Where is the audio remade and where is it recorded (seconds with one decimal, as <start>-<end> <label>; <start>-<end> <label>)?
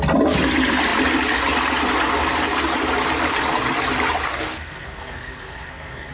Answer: 0.0-4.3 recorded; 4.3-6.1 remade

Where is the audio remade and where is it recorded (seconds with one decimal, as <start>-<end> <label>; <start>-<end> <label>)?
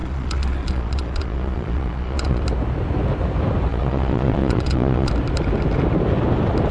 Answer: 0.0-2.4 remade; 2.4-3.7 recorded; 3.7-5.1 remade; 5.1-6.7 recorded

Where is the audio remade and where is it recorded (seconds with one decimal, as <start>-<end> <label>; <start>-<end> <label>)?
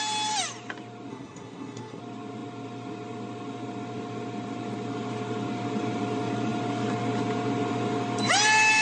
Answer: 0.0-1.1 recorded; 1.1-2.0 remade; 2.0-8.8 recorded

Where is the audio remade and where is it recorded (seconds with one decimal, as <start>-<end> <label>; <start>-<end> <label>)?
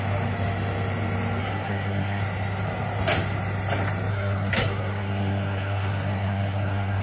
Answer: 0.0-1.4 recorded; 1.4-2.2 remade; 2.2-4.1 recorded; 4.1-7.0 remade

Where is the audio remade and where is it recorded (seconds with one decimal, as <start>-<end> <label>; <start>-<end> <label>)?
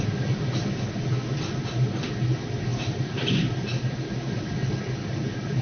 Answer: 0.0-2.7 recorded; 2.7-3.9 remade; 3.9-5.6 recorded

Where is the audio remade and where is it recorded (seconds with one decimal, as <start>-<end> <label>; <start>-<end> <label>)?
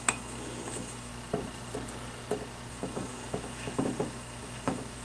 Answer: 0.0-1.1 remade; 1.1-2.7 recorded; 2.7-5.0 remade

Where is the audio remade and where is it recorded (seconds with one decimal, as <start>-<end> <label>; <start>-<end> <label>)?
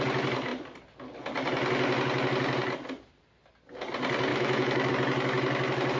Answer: 0.0-4.3 recorded; 4.3-4.9 remade; 4.9-6.0 recorded